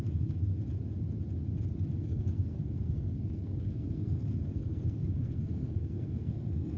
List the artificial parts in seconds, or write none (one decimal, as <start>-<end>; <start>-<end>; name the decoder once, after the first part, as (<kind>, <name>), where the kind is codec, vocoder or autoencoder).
0.0-0.5 (codec, SNAC); 2.0-6.8